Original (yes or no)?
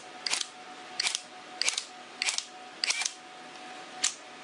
yes